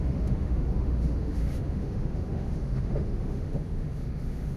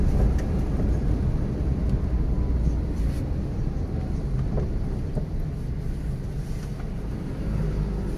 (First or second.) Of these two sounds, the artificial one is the first